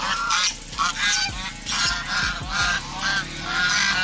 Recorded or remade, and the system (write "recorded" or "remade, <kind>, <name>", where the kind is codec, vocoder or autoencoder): recorded